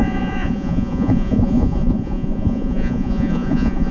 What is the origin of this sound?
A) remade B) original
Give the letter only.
A